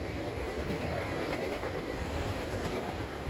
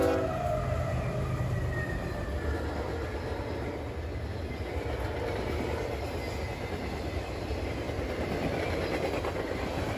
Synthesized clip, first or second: first